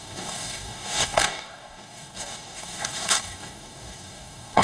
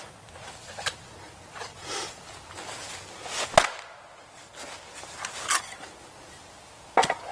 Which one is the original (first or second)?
second